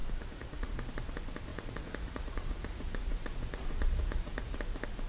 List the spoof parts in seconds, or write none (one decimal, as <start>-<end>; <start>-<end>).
0.0-0.7; 1.5-4.6